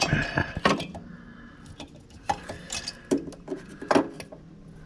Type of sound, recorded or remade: recorded